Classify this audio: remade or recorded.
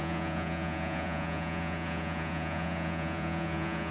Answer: remade